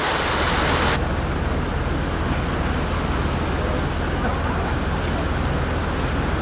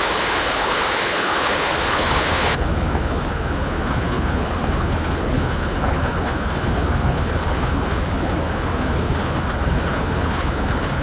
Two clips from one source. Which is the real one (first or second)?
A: first